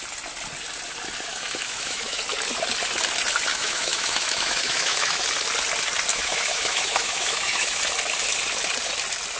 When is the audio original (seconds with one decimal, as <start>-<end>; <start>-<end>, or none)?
0.0-1.3; 2.2-3.5; 5.2-6.1; 7.8-9.4